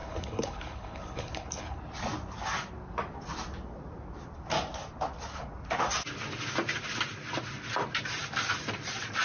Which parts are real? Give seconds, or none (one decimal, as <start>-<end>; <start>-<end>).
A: 1.8-9.2